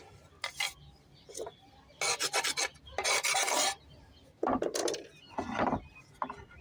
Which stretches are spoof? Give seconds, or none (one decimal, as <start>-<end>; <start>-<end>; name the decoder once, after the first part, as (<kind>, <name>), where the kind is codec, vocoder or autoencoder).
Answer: none